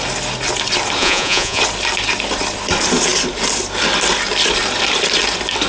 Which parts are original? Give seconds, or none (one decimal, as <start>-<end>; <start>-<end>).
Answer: 0.0-1.0; 1.6-5.7